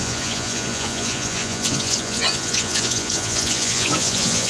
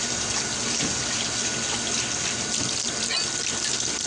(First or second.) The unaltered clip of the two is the second